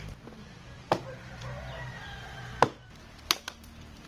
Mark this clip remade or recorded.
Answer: remade